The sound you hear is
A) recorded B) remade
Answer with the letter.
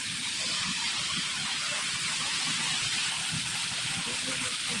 A